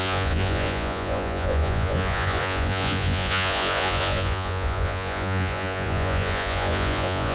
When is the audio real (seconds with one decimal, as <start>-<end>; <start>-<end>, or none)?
none